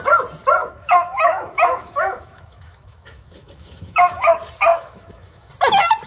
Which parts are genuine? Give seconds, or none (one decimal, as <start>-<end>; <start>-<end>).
0.0-0.6; 4.3-4.7; 5.5-6.1

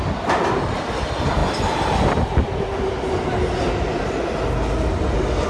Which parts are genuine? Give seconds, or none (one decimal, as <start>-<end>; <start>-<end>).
0.0-5.5

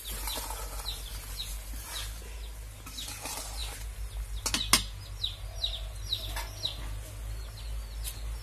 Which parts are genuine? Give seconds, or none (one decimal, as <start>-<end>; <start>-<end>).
0.0-8.4

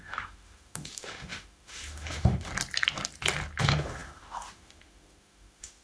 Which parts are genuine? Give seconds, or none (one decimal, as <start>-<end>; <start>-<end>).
2.5-3.6

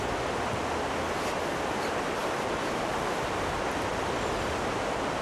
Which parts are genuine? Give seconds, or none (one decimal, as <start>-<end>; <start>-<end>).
0.0-5.2

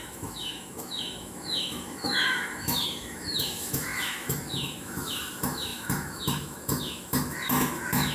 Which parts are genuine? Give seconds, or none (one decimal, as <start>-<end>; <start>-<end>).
none

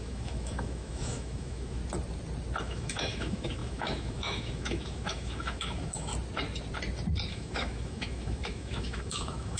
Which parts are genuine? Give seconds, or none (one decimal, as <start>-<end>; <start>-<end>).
1.8-2.6; 6.1-7.3